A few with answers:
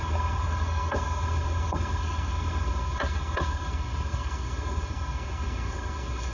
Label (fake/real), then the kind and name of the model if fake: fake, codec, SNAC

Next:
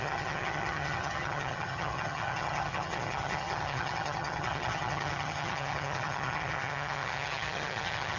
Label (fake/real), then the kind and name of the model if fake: fake, vocoder, HiFi-GAN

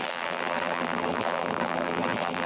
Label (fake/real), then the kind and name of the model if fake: fake, vocoder, BigVGAN v2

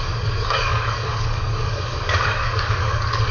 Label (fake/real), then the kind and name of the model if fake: fake, codec, DAC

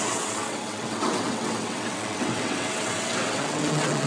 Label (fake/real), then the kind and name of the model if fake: fake, vocoder, WaveNeXt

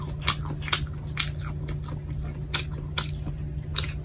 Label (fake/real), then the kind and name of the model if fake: real